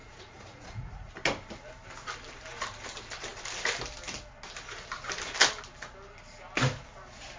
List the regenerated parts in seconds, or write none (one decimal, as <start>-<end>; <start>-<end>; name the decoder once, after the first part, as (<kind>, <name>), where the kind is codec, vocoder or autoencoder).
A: 0.0-1.1 (vocoder, Vocos)